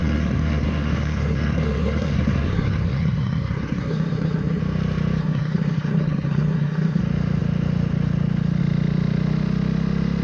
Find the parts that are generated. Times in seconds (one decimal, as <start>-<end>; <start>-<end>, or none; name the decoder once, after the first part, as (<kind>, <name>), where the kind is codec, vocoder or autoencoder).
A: 0.0-4.6 (codec, SNAC); 5.2-7.0